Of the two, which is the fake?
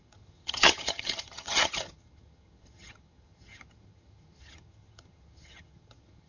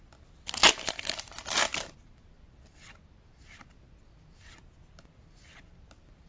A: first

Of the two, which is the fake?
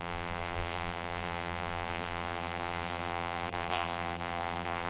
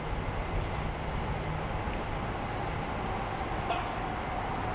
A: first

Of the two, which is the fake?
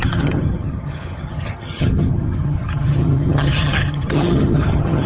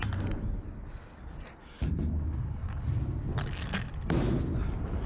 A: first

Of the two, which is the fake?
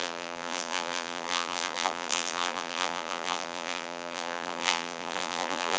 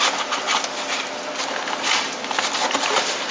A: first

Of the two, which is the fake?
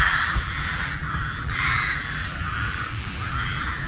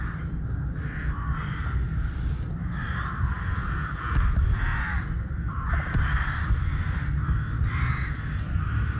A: first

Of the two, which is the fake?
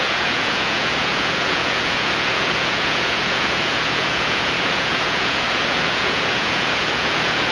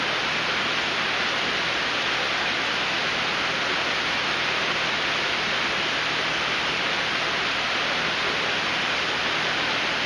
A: first